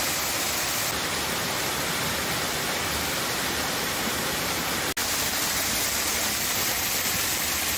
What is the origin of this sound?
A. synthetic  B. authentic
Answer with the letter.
B